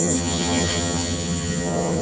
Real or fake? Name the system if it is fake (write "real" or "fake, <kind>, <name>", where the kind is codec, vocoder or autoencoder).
fake, vocoder, HiFi-GAN